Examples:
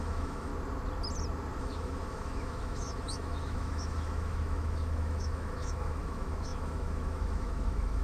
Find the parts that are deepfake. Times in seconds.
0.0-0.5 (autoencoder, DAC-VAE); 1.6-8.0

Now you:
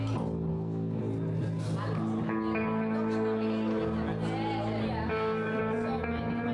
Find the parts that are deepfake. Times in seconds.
0.5-1.0 (codec, SNAC); 5.1-5.6

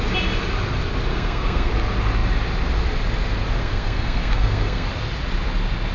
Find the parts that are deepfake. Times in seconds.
1.1-1.7 (codec, SNAC); 3.6-4.9

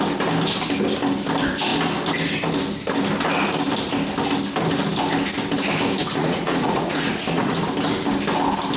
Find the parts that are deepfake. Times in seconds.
6.2-7.6 (vocoder, Vocos)

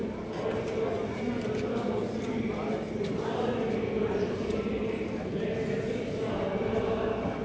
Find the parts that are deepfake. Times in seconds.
none